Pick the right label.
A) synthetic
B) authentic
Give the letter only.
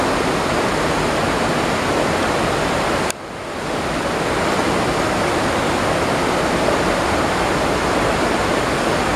B